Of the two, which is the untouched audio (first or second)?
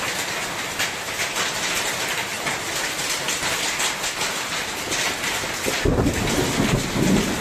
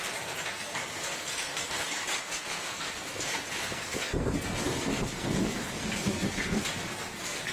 first